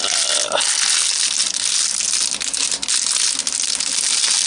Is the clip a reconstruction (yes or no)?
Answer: no